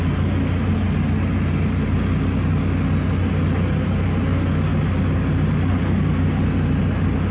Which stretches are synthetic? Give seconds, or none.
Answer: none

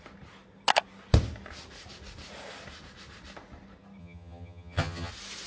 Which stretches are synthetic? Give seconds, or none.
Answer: 4.0-5.1 (vocoder, HiFi-GAN)

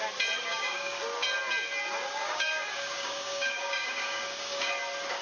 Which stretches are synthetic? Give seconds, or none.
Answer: 0.4-1.0 (codec, DAC); 2.2-4.7

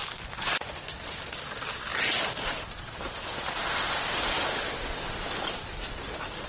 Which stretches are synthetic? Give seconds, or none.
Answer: none

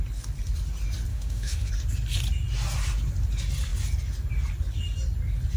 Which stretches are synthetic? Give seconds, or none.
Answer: 1.1-1.7 (autoencoder, DAC-VAE)

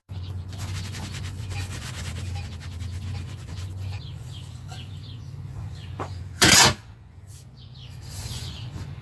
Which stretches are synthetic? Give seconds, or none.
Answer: 0.0-2.1 (vocoder, Vocos); 3.2-9.0